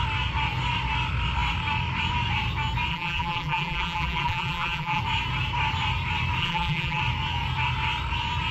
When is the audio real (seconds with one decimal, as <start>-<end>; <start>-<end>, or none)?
0.0-2.9; 5.0-6.4; 7.0-8.5